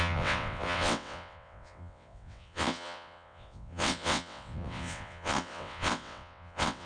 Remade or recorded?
remade